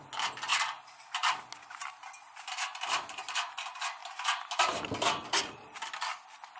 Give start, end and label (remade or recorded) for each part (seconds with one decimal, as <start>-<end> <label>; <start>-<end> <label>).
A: 0.0-6.6 recorded